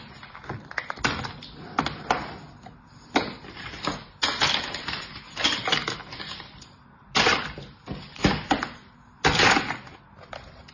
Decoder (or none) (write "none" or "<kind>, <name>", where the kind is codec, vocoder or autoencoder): none